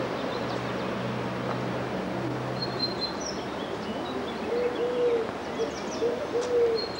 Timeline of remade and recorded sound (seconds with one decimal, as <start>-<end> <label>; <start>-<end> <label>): 0.0-2.6 recorded; 2.6-3.2 remade; 3.2-7.0 recorded